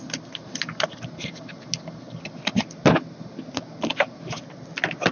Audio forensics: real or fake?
real